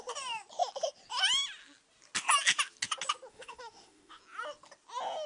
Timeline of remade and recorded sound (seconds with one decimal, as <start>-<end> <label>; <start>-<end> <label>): 0.0-3.3 recorded; 3.3-4.2 remade; 4.2-5.3 recorded